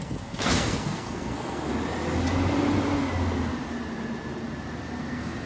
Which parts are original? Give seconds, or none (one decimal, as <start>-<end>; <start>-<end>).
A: 1.7-5.0